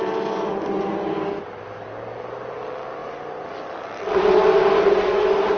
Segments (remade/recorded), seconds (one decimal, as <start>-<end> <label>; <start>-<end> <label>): 0.0-5.6 recorded